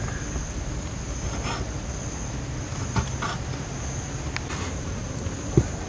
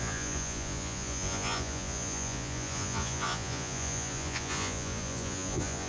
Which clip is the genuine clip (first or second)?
first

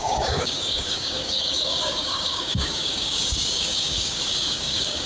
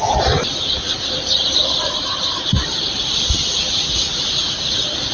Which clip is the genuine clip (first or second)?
second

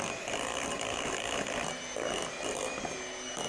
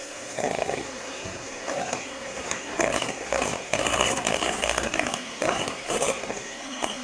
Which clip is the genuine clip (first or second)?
first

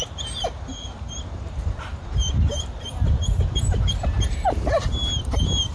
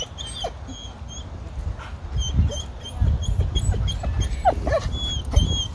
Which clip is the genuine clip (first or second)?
second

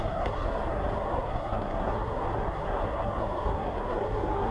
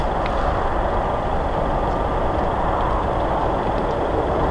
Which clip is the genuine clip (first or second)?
second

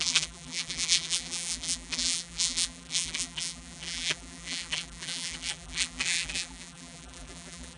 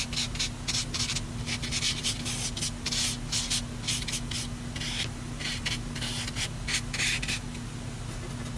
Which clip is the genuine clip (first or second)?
second